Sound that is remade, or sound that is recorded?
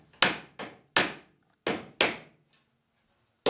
recorded